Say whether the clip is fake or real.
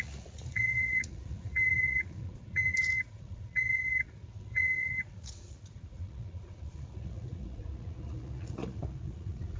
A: fake